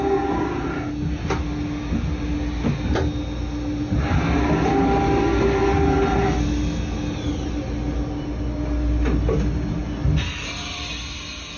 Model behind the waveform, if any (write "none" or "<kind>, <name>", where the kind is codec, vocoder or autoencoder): none